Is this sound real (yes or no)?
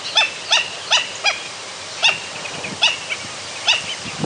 yes